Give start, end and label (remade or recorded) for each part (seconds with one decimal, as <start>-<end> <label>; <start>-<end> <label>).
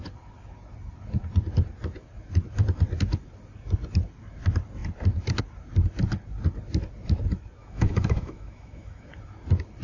0.0-7.6 recorded; 7.6-9.1 remade; 9.1-9.8 recorded